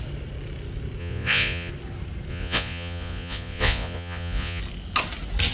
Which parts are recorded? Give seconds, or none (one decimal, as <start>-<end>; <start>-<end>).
0.0-1.0; 1.7-2.3; 4.6-5.5